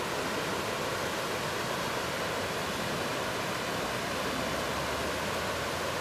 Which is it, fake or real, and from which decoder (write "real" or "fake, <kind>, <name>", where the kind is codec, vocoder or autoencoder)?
real